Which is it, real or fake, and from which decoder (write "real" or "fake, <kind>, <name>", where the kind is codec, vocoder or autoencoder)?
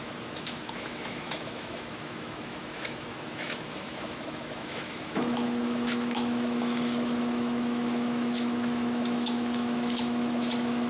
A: fake, autoencoder, DAC-VAE